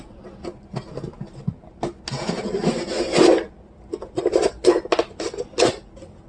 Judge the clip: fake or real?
real